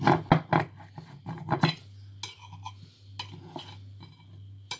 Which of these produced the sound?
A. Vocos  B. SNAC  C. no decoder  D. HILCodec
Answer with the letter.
C